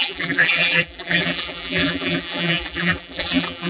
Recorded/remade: remade